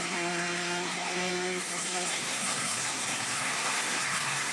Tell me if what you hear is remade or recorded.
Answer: remade